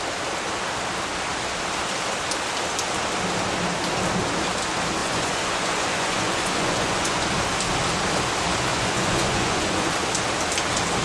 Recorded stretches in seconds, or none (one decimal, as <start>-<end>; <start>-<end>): 0.0-5.0; 7.3-8.7; 9.9-11.0